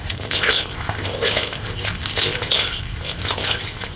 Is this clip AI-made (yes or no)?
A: yes